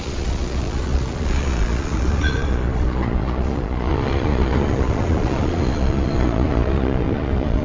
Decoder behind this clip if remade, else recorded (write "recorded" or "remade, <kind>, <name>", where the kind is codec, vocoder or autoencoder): remade, vocoder, Vocos